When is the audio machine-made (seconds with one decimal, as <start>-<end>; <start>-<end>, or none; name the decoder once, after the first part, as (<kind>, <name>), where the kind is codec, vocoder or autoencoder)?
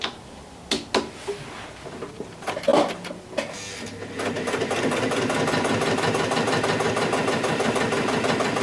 none